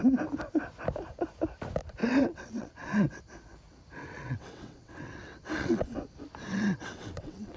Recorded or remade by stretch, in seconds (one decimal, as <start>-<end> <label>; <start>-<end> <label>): 0.0-2.0 recorded; 2.0-3.2 remade; 3.2-4.0 recorded; 4.0-5.9 remade; 5.9-6.5 recorded; 6.5-7.6 remade